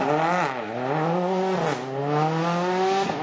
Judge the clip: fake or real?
real